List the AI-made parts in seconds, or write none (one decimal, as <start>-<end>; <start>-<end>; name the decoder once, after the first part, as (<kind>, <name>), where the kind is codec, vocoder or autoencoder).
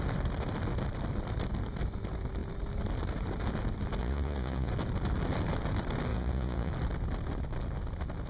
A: 4.0-4.7 (vocoder, Vocos); 6.1-6.7